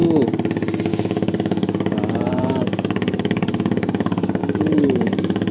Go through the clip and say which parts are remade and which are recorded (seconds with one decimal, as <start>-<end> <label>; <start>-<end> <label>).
0.0-0.9 recorded; 0.9-5.5 remade